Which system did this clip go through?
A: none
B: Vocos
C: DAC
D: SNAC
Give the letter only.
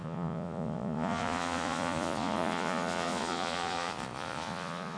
B